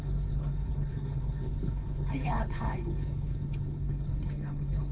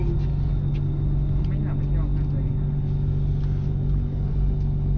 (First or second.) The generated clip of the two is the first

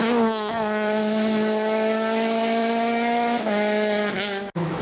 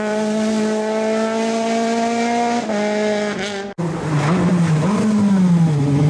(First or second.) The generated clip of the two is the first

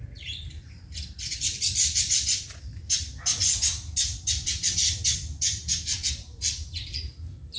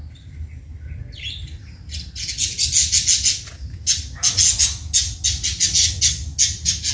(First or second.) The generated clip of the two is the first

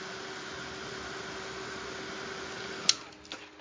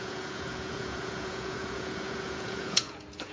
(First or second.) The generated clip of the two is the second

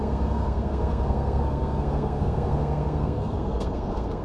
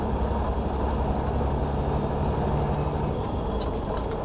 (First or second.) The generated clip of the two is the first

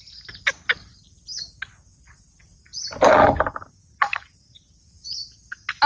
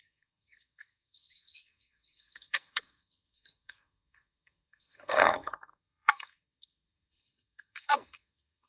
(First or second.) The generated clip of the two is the second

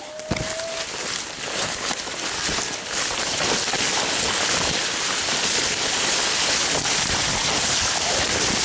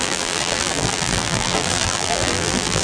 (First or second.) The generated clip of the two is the second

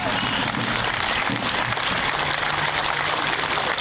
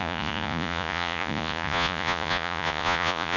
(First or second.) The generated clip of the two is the second